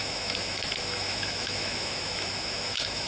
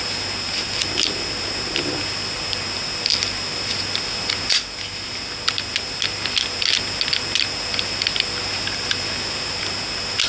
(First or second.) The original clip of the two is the second